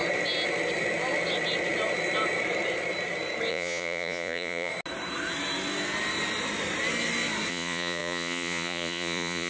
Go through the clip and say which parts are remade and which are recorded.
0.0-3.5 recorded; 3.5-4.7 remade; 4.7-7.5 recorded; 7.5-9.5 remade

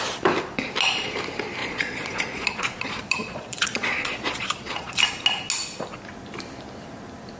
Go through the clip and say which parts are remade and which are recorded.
0.0-1.6 recorded; 1.6-5.0 remade; 5.0-7.4 recorded

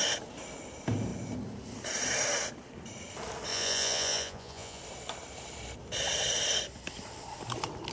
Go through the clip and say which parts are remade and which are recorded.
0.0-3.5 recorded; 3.5-4.8 remade; 4.8-7.9 recorded

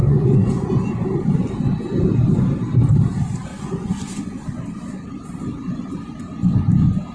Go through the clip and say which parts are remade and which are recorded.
0.0-0.7 remade; 0.7-3.5 recorded; 3.5-4.2 remade; 4.2-7.1 recorded